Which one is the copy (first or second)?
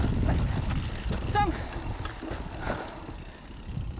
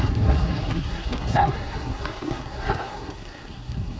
second